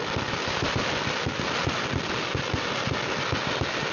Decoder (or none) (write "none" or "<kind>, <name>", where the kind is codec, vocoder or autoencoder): none